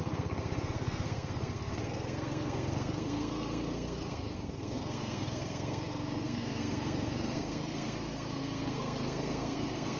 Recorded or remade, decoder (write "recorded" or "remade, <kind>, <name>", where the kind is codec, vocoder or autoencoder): remade, codec, SNAC